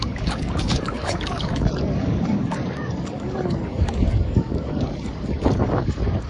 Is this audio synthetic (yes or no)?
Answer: yes